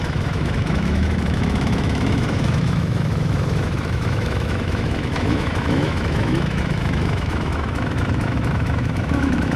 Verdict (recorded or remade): remade